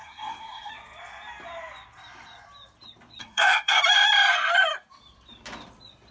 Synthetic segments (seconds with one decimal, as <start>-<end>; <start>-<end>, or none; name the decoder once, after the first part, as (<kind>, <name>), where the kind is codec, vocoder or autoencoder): 0.0-0.7 (codec, SNAC); 3.2-3.8